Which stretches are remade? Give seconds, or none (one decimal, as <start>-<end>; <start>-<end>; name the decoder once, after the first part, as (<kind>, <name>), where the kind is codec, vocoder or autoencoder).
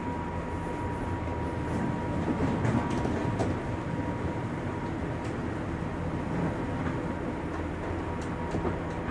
3.4-4.8 (vocoder, BigVGAN v2); 5.4-6.1